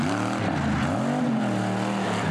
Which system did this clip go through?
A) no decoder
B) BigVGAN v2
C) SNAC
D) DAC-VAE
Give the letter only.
A